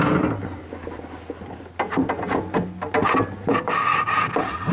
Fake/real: real